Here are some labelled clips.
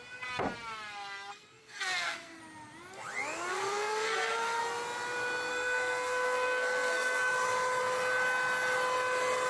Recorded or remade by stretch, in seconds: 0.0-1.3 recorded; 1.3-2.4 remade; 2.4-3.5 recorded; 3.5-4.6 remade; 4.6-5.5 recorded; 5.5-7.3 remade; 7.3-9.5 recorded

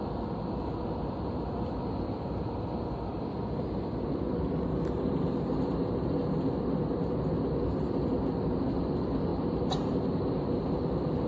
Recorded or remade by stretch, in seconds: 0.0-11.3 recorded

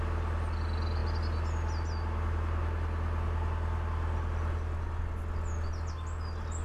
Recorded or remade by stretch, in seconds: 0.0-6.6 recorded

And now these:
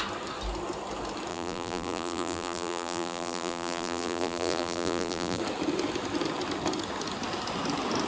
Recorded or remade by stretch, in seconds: 0.0-1.3 recorded; 1.3-5.4 remade; 5.4-8.1 recorded

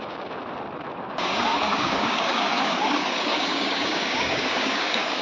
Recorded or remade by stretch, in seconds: 0.0-0.4 remade; 0.4-1.0 recorded; 1.0-5.2 remade

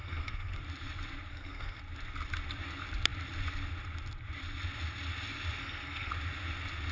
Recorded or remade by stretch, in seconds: 0.0-0.6 remade; 0.6-1.3 recorded; 1.3-1.8 remade; 1.8-5.6 recorded; 5.6-6.1 remade; 6.1-6.9 recorded

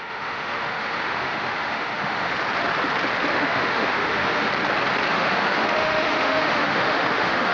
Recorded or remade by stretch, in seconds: 0.0-2.3 remade; 2.3-3.3 recorded; 3.3-4.5 remade; 4.5-5.1 recorded; 5.1-7.5 remade

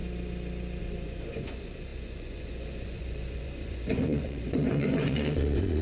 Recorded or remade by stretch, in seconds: 0.0-0.8 recorded; 0.8-5.8 remade